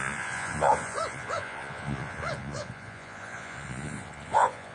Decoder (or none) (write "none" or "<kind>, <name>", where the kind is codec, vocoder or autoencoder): vocoder, Vocos